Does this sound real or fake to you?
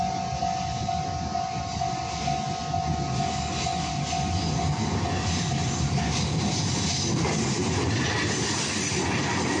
real